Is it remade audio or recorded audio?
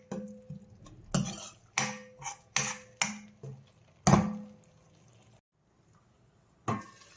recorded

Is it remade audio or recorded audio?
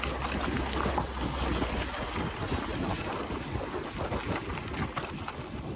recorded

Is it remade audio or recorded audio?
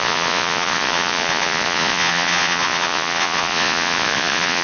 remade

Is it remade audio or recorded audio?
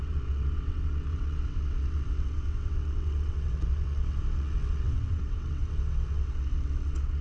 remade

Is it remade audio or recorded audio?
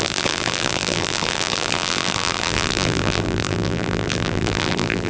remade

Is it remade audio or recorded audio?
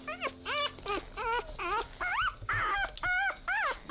recorded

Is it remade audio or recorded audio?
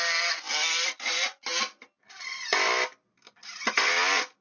recorded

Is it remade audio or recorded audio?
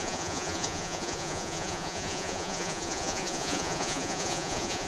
remade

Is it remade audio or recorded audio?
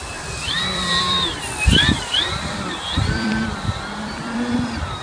remade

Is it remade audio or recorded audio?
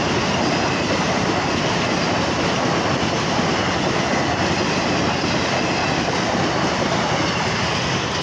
recorded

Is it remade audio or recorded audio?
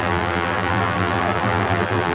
remade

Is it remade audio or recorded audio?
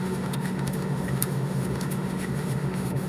remade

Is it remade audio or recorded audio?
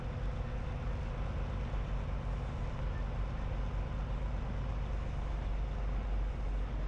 recorded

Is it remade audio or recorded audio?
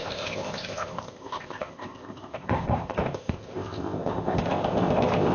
remade